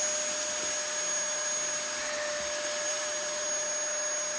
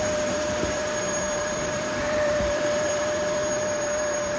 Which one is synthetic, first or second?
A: second